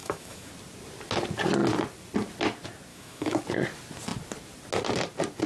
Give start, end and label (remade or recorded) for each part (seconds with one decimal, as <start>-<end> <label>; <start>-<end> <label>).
0.0-0.5 remade; 0.5-2.9 recorded; 2.9-3.4 remade; 3.4-5.5 recorded